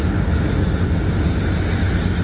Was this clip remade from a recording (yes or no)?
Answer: no